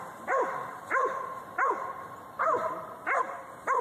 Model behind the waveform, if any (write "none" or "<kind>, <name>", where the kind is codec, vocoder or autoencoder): vocoder, BigVGAN v2